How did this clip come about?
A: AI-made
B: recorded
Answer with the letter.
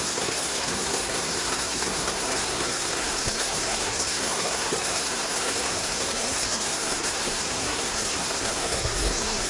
A